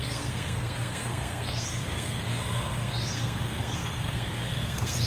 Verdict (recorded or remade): remade